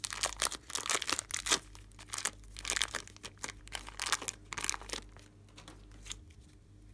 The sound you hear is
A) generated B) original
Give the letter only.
B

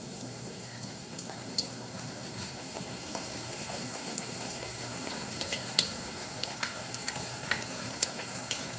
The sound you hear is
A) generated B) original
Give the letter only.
A